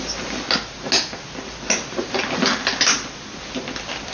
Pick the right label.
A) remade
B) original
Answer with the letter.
B